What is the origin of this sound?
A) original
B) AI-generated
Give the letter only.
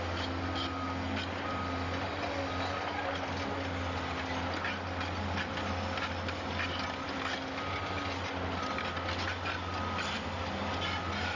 A